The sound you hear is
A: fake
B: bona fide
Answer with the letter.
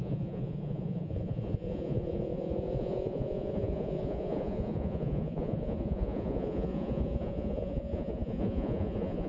A